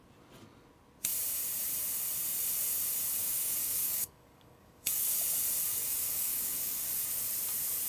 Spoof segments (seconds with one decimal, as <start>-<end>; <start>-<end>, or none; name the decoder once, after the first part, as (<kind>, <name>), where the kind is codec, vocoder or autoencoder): 3.2-5.2 (codec, DAC); 5.7-7.1